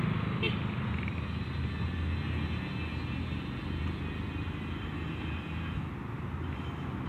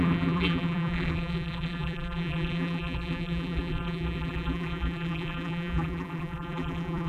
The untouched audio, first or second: first